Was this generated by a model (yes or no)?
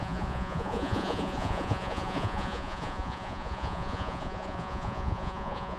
yes